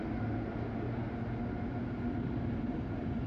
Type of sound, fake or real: real